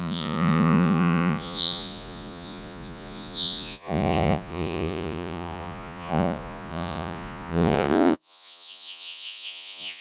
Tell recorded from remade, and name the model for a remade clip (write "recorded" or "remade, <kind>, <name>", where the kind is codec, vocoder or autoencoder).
remade, vocoder, Vocos